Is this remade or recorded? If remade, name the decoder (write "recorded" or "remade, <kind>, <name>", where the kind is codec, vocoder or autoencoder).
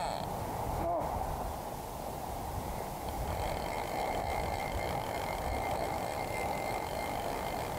recorded